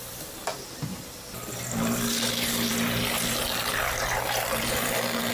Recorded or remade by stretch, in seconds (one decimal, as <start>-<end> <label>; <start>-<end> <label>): 0.0-5.3 recorded